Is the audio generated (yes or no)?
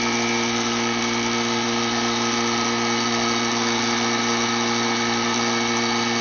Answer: no